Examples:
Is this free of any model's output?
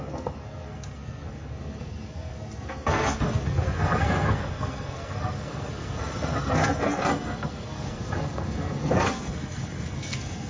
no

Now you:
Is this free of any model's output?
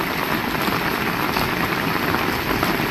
yes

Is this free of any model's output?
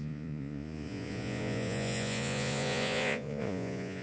no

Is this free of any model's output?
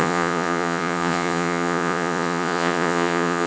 no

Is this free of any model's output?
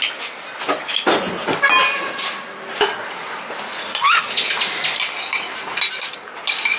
yes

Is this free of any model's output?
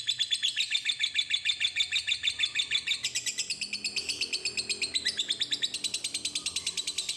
yes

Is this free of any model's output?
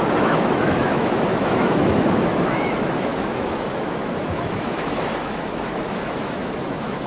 no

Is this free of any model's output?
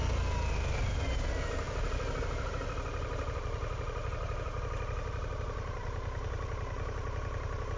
yes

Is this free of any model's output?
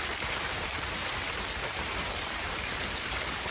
no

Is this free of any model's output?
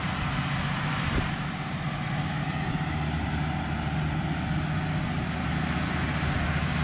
yes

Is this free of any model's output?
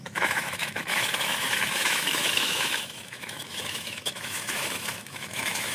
no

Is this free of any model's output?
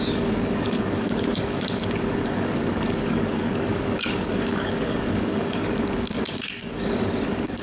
no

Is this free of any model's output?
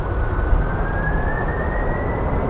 yes